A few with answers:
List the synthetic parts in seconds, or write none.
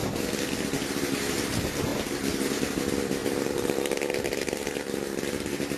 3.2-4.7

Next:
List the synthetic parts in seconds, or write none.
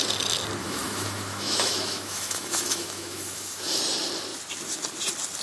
0.6-3.8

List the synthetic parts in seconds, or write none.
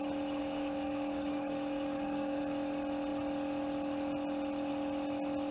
0.4-2.4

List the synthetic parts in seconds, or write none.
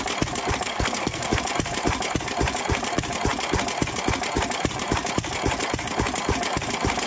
0.7-1.3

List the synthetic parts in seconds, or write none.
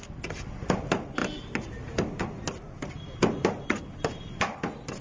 none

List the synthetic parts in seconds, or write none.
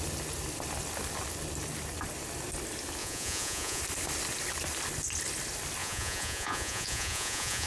3.0-3.8; 5.8-7.7